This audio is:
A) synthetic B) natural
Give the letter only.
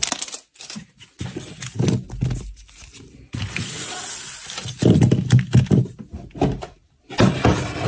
B